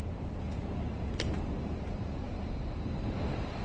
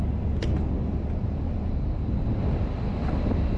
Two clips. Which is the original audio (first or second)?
second